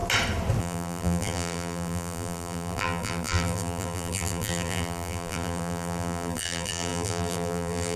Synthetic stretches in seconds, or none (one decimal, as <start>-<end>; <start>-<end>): 0.6-8.0